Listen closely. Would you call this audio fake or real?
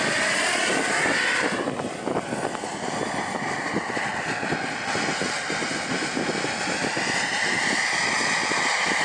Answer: real